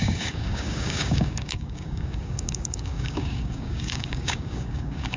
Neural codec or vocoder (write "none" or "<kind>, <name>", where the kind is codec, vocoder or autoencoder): codec, DAC